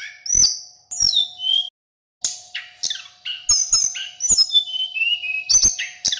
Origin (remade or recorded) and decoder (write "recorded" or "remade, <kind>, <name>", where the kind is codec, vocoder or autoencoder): recorded